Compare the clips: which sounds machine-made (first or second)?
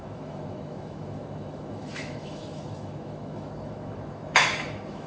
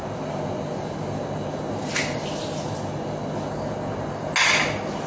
first